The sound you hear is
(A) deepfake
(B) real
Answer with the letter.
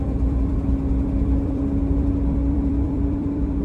A